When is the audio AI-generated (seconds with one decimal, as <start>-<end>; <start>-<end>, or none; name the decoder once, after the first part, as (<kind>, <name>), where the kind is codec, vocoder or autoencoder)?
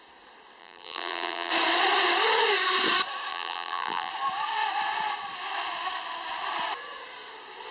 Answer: 0.6-1.5 (vocoder, BigVGAN v2); 3.3-4.1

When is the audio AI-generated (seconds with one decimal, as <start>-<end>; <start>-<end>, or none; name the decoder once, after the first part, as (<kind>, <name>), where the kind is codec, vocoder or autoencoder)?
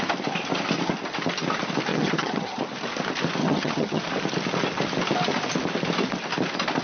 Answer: 1.9-2.6 (vocoder, HiFi-GAN); 3.4-4.0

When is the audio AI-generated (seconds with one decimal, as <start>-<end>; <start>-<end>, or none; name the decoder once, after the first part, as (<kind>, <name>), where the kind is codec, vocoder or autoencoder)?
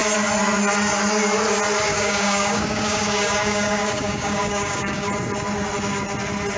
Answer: 1.9-5.1 (codec, DAC)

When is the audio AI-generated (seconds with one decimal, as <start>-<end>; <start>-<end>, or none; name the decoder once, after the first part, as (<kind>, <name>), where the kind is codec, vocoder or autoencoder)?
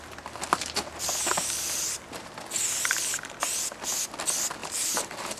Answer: 4.6-5.4 (vocoder, BigVGAN v2)